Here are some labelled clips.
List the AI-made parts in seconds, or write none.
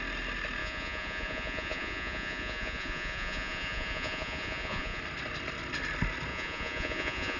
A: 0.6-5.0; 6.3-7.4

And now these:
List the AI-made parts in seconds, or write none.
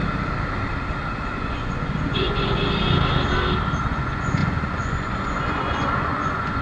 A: 1.3-2.6; 3.8-6.6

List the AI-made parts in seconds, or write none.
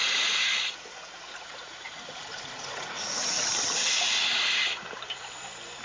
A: 0.0-3.5